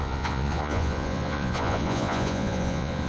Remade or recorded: remade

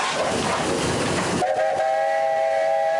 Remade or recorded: recorded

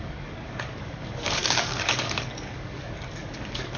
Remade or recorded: remade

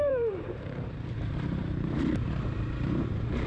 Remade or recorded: remade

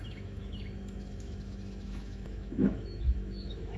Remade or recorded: remade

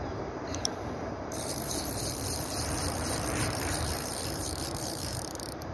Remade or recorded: remade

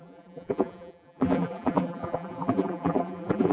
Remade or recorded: remade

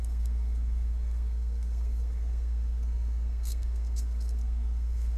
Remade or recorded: remade